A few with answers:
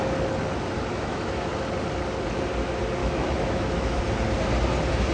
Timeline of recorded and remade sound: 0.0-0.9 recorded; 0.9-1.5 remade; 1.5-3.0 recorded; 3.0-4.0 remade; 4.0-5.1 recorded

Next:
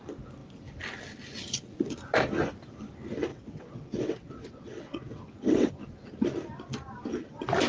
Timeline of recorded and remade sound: 0.0-3.3 recorded; 3.3-5.7 remade; 5.7-7.7 recorded

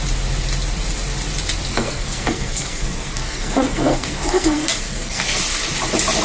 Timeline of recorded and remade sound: 0.0-1.7 recorded; 1.7-5.4 remade; 5.4-6.2 recorded

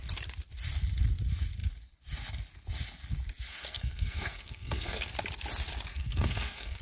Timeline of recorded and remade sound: 0.0-3.5 recorded; 3.5-5.1 remade; 5.1-5.9 recorded; 5.9-6.8 remade

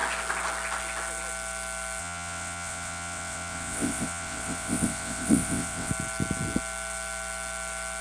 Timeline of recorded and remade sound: 0.0-2.0 recorded; 2.0-5.9 remade; 5.9-8.0 recorded

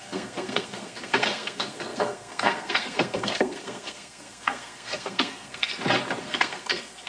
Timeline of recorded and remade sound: 0.0-5.7 remade; 5.7-6.2 recorded; 6.2-7.1 remade